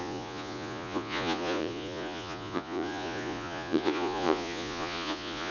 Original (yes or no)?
no